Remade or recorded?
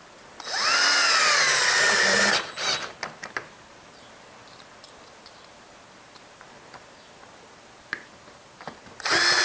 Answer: recorded